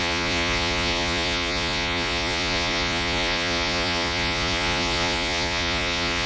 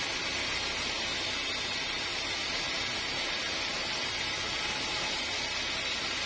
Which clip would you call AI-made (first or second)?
first